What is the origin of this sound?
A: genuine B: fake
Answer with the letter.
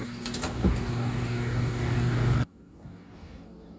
B